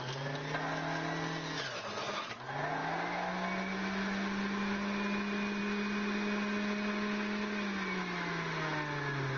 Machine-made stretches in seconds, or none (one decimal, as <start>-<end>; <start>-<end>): none